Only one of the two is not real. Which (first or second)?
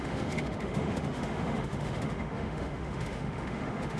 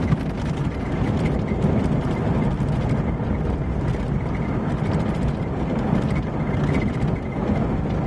first